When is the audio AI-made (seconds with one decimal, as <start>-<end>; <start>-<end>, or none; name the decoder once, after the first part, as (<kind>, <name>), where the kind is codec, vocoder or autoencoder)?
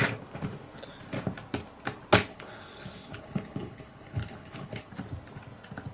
2.3-4.9 (codec, HILCodec)